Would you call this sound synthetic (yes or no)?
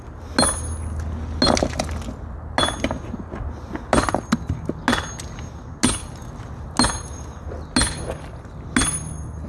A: no